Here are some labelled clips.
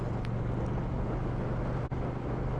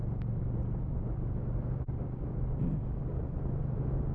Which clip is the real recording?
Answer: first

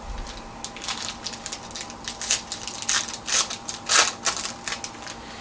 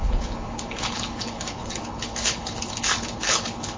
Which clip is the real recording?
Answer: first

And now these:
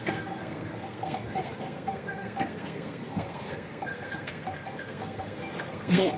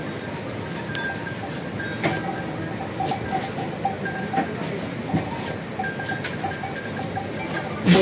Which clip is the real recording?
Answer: second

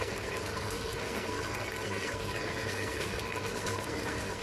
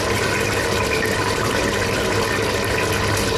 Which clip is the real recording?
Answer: second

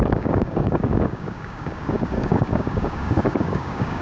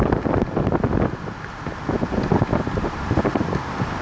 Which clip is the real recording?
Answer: second